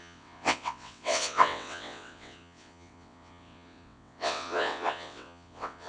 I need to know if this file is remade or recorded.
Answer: remade